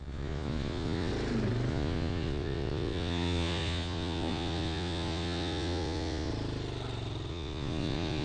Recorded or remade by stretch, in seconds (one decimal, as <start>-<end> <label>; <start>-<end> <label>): 0.0-1.1 remade; 1.1-1.7 recorded; 1.7-6.3 remade; 6.3-7.3 recorded; 7.3-8.2 remade